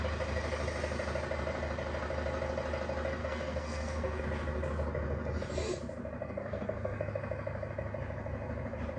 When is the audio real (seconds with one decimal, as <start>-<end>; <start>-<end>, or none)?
0.0-3.2; 4.2-6.2; 7.1-9.0